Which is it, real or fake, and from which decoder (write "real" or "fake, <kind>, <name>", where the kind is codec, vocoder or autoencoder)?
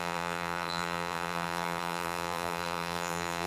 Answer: fake, vocoder, BigVGAN v2